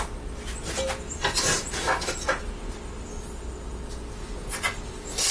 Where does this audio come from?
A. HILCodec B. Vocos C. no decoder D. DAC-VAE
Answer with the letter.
C